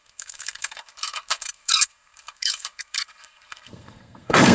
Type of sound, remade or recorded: remade